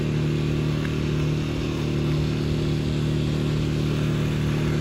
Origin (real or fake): real